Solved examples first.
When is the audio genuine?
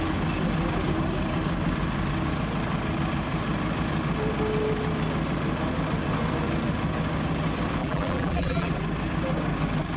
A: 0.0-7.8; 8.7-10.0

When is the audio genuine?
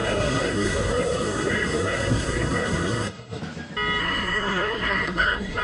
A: 3.4-4.0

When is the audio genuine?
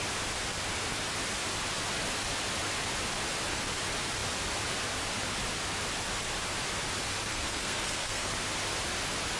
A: 0.0-7.3; 8.3-9.4